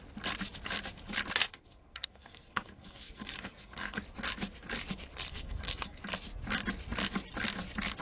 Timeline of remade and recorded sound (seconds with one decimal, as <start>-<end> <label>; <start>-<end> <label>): 0.0-1.4 recorded; 1.4-4.0 remade; 4.0-5.3 recorded; 5.3-6.0 remade; 6.0-8.0 recorded